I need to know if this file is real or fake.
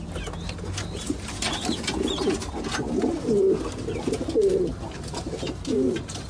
real